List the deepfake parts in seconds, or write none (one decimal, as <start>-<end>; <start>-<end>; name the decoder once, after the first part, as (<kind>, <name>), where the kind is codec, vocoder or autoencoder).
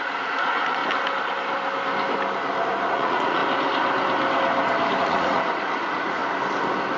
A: 0.0-0.8 (vocoder, Vocos); 2.9-3.4; 5.0-6.2